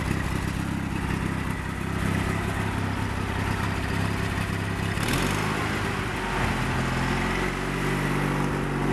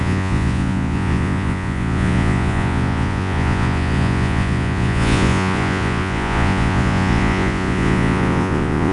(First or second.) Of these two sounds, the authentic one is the first